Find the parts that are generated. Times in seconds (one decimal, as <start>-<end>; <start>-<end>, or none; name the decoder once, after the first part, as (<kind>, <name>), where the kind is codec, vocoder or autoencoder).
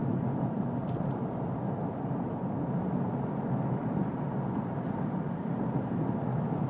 none